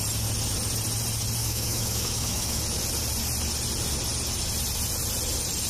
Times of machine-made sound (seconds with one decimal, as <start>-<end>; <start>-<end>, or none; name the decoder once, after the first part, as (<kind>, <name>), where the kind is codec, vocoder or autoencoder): 1.4-2.6 (autoencoder, DAC-VAE)